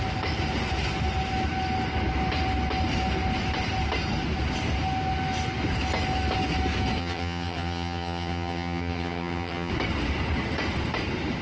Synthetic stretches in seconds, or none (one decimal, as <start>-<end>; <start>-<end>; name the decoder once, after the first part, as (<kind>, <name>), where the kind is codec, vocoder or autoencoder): 7.0-9.7 (vocoder, HiFi-GAN)